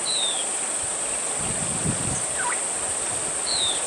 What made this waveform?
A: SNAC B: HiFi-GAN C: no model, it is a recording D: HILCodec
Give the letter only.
C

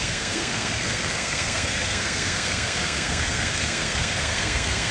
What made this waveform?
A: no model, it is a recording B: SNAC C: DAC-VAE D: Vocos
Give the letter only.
B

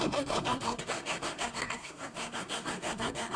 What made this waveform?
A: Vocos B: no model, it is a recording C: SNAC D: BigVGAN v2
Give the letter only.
C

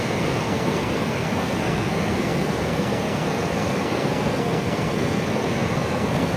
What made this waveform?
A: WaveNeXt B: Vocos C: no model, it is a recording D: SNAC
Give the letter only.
D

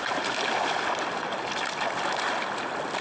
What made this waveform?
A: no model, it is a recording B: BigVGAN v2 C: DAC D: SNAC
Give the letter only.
A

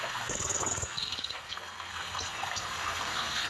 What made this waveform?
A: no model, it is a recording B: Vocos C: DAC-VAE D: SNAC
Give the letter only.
D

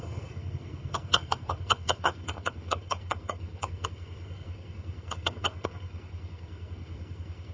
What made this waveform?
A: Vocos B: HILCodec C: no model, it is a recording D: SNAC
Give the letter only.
D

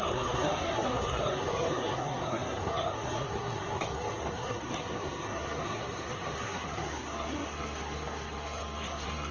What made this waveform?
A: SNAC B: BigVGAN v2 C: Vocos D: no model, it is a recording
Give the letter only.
A